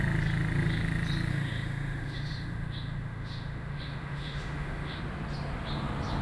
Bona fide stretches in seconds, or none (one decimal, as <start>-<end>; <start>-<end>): 0.0-1.3; 5.0-6.2